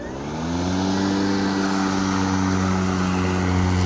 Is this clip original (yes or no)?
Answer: yes